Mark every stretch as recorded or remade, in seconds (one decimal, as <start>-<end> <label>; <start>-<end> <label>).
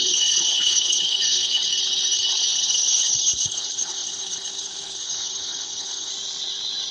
0.0-1.7 remade; 1.7-2.4 recorded; 2.4-6.1 remade; 6.1-6.9 recorded